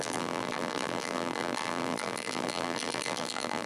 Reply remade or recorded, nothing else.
remade